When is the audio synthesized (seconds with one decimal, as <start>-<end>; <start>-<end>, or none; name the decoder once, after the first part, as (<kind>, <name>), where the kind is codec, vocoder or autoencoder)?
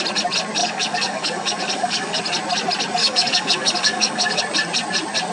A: 0.6-2.2 (codec, DAC); 3.0-4.4